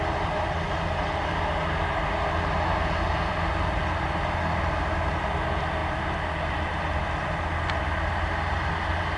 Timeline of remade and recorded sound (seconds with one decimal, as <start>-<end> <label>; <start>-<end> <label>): 0.0-9.2 recorded